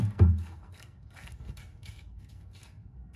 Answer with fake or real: fake